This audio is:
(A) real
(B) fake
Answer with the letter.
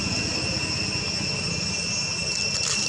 A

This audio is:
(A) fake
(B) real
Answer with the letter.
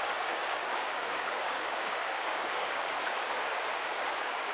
A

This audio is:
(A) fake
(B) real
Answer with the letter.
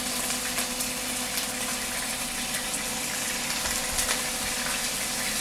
B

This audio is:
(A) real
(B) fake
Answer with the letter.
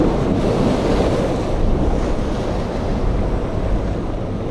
A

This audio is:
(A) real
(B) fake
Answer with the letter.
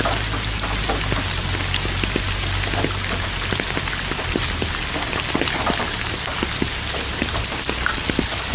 A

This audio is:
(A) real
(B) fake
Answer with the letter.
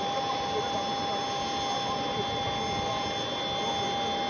A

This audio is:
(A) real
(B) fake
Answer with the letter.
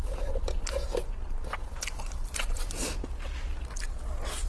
A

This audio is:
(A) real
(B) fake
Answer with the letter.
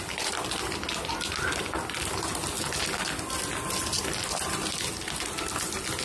A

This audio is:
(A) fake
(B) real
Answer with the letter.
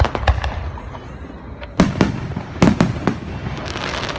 B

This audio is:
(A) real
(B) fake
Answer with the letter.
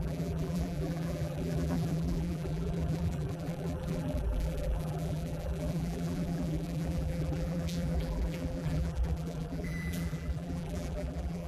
B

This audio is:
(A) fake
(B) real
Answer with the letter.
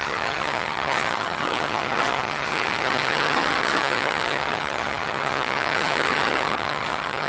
A